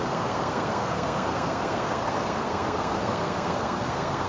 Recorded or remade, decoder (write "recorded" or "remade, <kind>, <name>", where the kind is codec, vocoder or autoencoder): remade, codec, SNAC